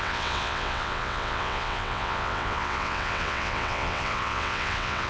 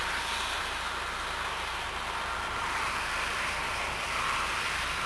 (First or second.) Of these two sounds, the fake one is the first